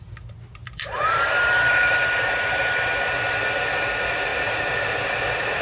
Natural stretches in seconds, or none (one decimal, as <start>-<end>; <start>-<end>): 0.0-0.6; 2.7-5.6